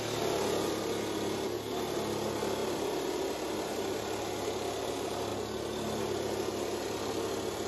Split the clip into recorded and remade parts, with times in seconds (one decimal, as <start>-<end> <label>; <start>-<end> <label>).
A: 0.0-2.6 recorded; 2.6-4.2 remade; 4.2-7.7 recorded